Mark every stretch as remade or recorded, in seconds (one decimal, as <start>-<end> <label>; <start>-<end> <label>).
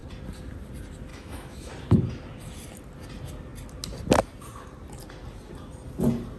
0.0-1.1 recorded; 1.1-1.7 remade; 1.7-6.4 recorded